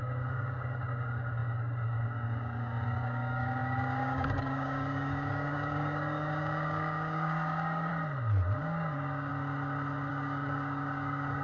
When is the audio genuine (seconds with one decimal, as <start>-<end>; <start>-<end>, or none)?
7.9-8.6; 9.3-10.1